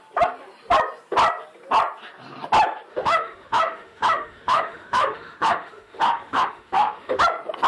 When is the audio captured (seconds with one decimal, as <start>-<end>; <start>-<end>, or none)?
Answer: 0.0-2.9; 7.2-7.7